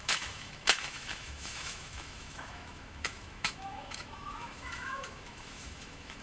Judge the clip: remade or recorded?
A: remade